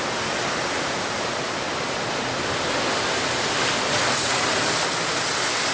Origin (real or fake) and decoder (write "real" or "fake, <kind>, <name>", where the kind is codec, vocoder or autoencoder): real